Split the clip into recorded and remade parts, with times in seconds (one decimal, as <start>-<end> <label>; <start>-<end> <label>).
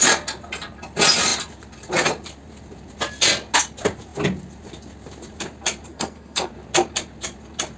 0.0-5.9 recorded; 5.9-6.5 remade; 6.5-7.8 recorded